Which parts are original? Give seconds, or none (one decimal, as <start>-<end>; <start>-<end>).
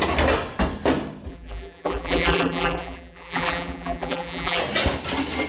0.0-1.3; 4.6-5.5